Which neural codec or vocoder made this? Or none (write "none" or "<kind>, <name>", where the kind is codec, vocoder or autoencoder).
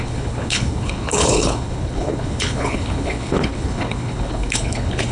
codec, HILCodec